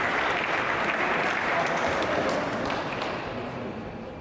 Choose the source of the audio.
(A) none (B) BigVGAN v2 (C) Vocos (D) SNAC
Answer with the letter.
A